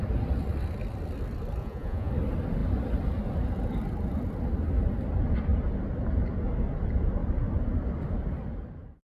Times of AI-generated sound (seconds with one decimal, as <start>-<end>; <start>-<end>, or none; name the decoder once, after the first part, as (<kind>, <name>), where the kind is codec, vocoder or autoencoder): 1.6-2.1 (vocoder, Vocos)